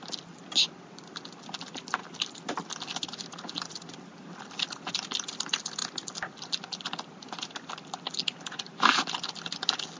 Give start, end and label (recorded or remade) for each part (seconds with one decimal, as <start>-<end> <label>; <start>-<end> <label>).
0.0-10.0 recorded